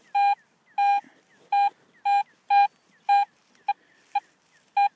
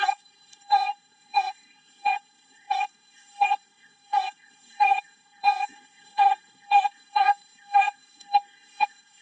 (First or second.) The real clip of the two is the first